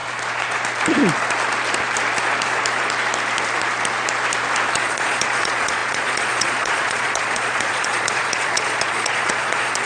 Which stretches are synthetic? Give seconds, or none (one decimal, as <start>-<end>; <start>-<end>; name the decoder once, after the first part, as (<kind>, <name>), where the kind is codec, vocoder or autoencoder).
4.7-9.9 (vocoder, Vocos)